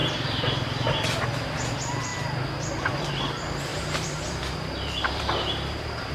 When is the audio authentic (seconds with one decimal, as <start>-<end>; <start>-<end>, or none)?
0.0-3.7